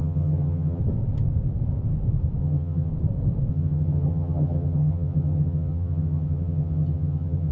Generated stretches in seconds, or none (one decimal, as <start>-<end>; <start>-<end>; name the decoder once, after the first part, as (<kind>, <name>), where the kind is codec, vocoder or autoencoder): 0.0-0.8 (vocoder, HiFi-GAN); 2.4-2.9; 3.5-7.5